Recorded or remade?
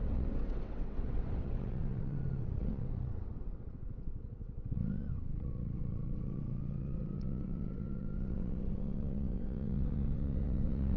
remade